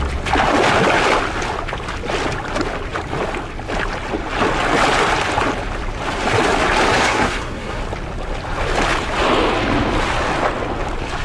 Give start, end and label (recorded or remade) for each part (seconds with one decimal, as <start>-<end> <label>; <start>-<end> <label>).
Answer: 0.0-6.9 recorded; 6.9-7.8 remade; 7.8-11.2 recorded